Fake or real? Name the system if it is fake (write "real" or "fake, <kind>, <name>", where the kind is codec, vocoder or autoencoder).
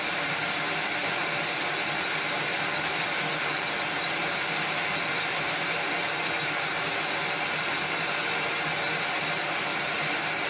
real